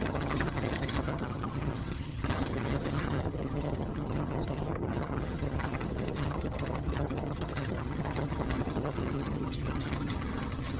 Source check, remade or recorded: remade